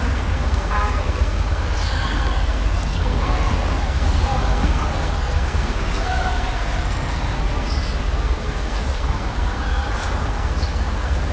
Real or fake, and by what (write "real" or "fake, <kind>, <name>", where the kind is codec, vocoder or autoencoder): fake, codec, SNAC